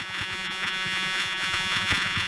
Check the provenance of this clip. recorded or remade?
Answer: remade